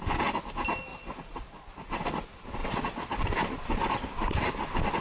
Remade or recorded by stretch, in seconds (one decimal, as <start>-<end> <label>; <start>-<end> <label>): 0.0-0.9 recorded; 0.9-1.9 remade; 1.9-2.6 recorded; 2.6-3.2 remade; 3.2-5.0 recorded